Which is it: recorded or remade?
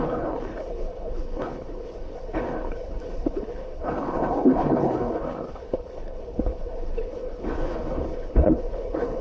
remade